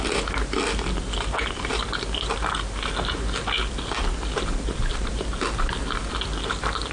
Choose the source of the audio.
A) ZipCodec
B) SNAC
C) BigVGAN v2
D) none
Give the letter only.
D